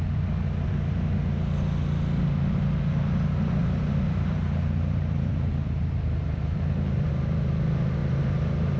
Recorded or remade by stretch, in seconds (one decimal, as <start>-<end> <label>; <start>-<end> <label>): 0.0-3.6 recorded; 3.6-7.1 remade; 7.1-8.0 recorded; 8.0-8.8 remade